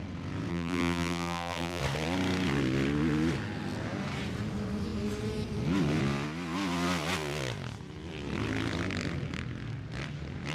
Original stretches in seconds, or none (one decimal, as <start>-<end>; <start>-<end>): 0.0-0.5; 1.8-10.5